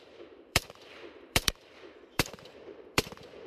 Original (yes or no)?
no